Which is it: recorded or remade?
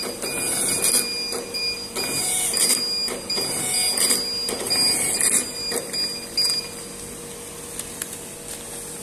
recorded